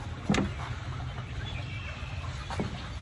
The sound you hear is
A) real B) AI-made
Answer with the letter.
A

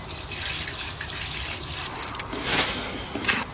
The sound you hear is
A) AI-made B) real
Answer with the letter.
B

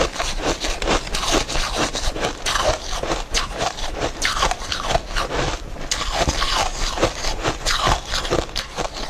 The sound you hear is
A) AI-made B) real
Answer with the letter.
A